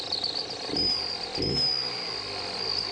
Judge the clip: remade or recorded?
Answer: recorded